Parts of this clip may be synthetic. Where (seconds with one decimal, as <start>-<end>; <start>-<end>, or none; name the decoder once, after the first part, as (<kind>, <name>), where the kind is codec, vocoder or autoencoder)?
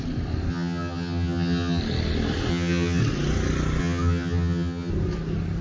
0.5-1.8 (vocoder, HiFi-GAN); 2.5-3.0; 3.8-4.9